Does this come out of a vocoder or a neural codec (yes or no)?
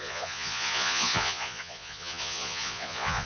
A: yes